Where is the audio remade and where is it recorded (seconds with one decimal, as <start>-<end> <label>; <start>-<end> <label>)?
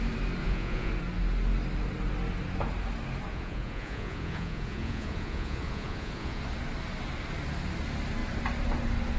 0.0-0.4 recorded; 0.4-0.9 remade; 0.9-3.3 recorded; 3.3-6.4 remade; 6.4-9.2 recorded